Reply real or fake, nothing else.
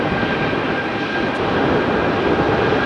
real